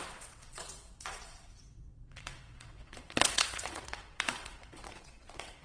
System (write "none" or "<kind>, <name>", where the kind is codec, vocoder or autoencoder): vocoder, WaveNeXt